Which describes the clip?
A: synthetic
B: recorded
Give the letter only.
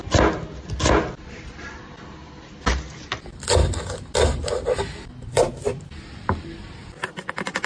B